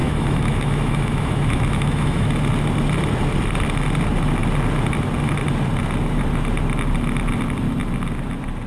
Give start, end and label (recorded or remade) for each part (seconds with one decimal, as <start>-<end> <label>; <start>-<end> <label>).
0.0-2.3 remade; 2.3-8.7 recorded